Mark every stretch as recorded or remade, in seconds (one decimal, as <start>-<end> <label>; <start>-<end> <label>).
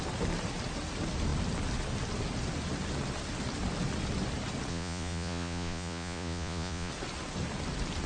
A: 0.0-4.7 recorded; 4.7-6.9 remade; 6.9-8.1 recorded